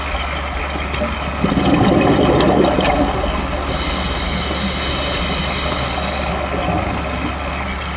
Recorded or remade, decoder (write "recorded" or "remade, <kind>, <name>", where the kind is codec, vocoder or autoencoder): recorded